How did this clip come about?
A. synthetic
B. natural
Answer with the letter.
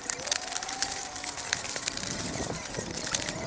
B